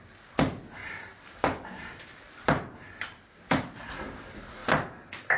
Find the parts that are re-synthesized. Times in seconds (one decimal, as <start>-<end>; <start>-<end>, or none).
0.8-3.7